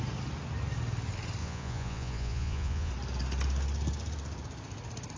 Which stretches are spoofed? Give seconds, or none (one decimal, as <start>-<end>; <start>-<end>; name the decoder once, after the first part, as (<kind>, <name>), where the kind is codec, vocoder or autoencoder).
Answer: 1.4-2.9 (vocoder, Vocos)